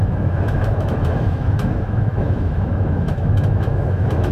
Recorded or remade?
remade